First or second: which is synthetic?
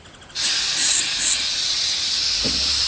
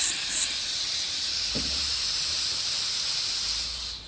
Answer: second